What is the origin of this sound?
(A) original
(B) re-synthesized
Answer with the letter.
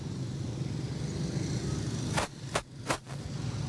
A